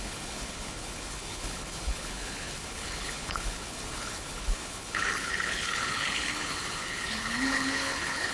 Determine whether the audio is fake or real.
fake